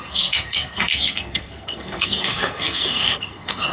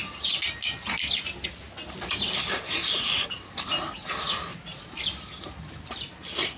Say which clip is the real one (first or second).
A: second